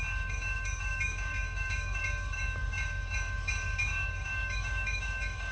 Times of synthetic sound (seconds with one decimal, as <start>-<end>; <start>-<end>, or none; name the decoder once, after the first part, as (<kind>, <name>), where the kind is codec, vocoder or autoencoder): 0.0-5.5 (codec, DAC)